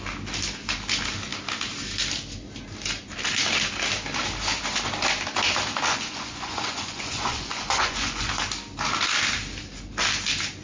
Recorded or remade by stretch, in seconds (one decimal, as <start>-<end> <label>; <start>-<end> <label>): 0.0-5.9 recorded; 5.9-8.3 remade; 8.3-10.6 recorded